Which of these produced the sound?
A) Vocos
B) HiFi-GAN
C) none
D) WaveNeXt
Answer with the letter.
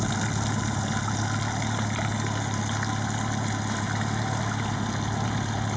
C